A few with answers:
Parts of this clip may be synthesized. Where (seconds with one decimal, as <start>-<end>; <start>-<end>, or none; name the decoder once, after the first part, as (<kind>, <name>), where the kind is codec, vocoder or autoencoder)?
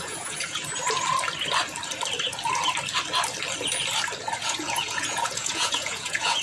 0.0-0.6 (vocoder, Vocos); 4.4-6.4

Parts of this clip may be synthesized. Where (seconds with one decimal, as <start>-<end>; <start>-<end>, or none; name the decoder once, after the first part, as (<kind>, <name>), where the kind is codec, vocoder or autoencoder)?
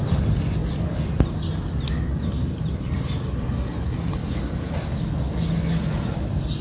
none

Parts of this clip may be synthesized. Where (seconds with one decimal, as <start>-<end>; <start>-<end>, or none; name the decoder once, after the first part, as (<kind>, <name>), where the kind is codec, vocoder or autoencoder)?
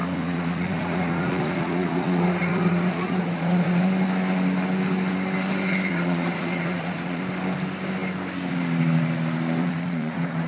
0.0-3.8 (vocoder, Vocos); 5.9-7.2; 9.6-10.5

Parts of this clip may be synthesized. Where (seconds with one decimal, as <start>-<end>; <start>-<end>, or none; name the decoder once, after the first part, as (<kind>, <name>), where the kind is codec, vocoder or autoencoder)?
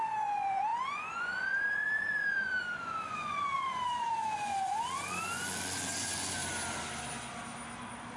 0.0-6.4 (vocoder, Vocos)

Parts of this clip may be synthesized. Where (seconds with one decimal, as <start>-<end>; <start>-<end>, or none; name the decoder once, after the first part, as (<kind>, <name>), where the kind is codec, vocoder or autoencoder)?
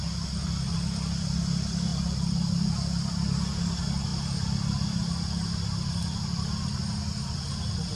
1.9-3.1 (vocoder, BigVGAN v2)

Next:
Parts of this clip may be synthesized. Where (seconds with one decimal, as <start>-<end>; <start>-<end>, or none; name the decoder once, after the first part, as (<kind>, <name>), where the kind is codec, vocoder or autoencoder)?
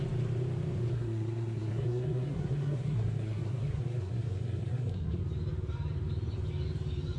0.9-5.2 (codec, SNAC)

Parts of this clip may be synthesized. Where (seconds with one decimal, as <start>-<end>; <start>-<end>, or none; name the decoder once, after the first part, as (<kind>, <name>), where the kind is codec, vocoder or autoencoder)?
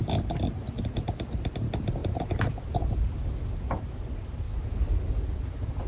none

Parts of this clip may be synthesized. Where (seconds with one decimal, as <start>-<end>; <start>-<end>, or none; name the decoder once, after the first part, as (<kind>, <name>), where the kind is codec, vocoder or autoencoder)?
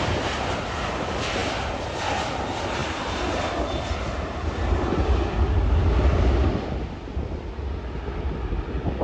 none